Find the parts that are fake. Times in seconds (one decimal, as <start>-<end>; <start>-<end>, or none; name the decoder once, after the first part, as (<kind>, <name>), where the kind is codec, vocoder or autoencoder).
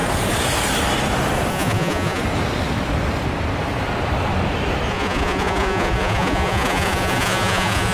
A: 1.5-2.2 (vocoder, Vocos); 4.9-7.9